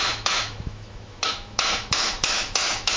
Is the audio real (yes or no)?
no